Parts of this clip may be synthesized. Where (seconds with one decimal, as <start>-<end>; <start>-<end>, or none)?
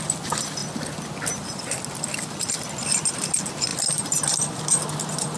none